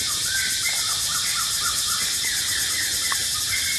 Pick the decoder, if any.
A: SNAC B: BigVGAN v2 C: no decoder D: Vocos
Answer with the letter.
C